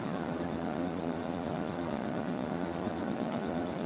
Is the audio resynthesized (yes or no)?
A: yes